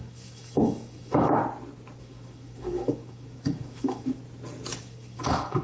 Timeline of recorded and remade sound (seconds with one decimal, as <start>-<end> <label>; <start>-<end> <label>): 0.0-1.4 remade; 1.4-2.0 recorded; 2.0-4.2 remade; 4.2-4.8 recorded; 4.8-5.6 remade